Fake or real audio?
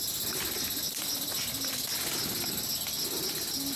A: real